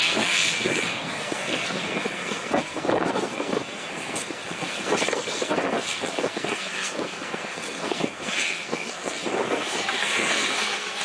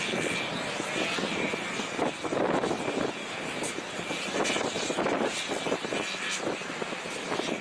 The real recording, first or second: second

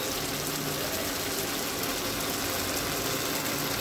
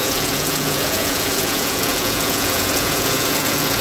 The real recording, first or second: first